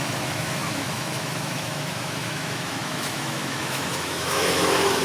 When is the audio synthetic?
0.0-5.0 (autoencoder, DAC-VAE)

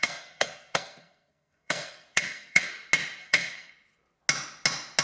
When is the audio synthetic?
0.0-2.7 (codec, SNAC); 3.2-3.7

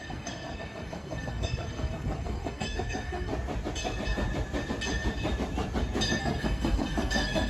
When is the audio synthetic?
0.0-3.3 (codec, SNAC); 6.2-7.5

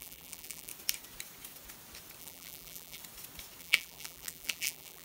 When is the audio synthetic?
0.0-0.7 (vocoder, BigVGAN v2); 2.2-3.0; 3.6-5.0